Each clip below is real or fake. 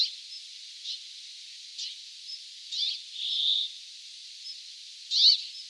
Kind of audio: real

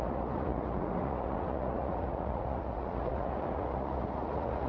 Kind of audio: fake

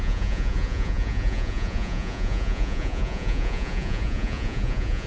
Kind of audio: fake